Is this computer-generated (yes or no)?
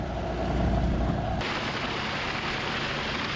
no